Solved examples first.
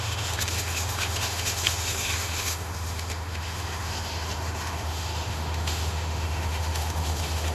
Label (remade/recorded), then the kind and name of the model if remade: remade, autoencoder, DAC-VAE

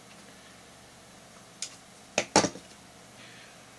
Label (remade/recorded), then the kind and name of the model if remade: recorded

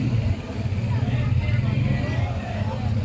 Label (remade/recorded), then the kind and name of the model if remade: recorded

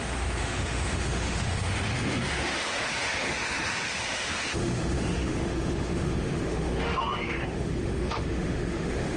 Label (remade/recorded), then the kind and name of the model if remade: remade, autoencoder, DAC-VAE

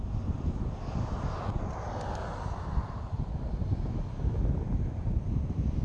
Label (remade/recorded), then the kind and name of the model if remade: recorded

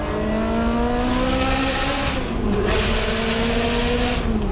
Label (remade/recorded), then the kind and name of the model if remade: recorded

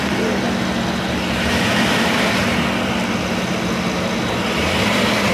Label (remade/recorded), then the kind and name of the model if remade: recorded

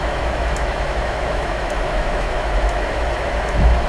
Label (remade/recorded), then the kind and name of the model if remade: remade, autoencoder, DAC-VAE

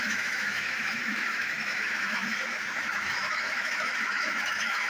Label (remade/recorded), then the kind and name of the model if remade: remade, autoencoder, DAC-VAE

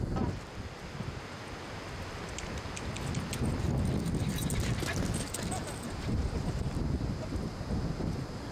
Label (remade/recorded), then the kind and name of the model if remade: recorded